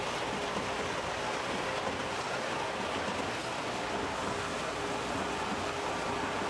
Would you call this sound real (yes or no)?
yes